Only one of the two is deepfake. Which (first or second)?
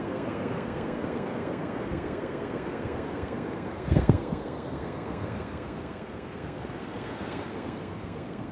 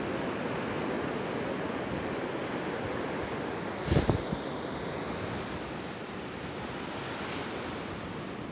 first